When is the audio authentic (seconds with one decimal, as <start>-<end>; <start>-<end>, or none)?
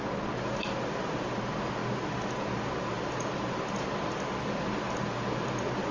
0.0-5.9